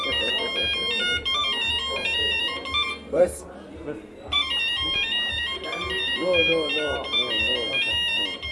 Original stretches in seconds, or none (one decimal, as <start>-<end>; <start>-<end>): 0.0-2.9; 3.4-8.5